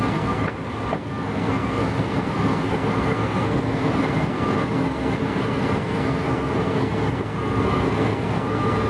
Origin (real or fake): fake